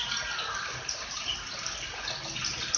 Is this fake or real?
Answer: real